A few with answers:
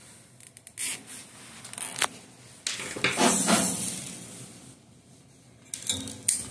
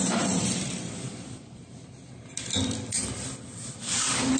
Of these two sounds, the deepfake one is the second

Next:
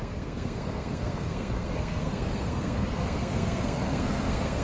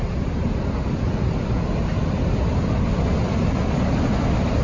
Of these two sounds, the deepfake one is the first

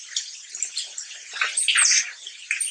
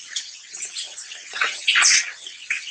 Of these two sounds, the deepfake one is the second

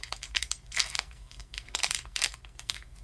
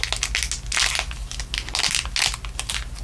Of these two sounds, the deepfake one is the first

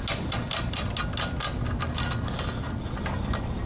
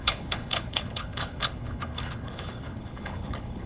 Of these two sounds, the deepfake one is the second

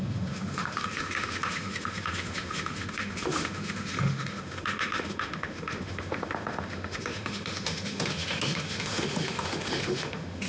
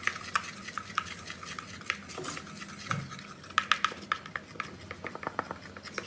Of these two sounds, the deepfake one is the first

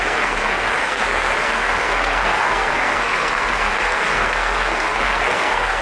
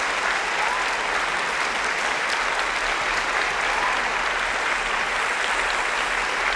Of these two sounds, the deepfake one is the first